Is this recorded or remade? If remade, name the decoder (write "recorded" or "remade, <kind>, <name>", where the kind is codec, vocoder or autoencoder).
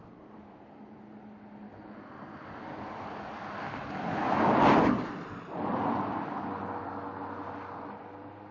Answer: recorded